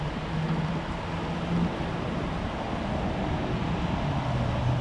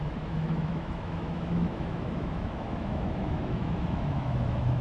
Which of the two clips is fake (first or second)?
second